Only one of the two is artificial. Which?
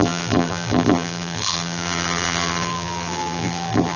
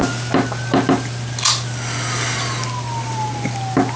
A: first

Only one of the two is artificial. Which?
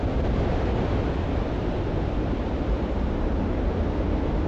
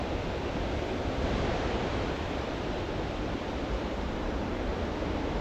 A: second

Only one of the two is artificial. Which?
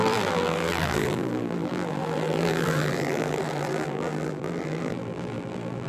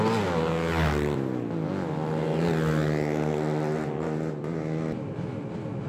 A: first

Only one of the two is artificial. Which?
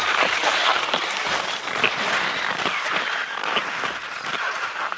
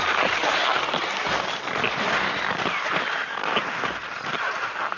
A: first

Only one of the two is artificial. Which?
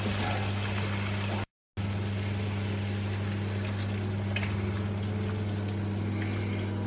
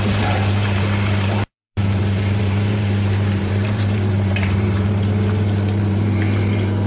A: second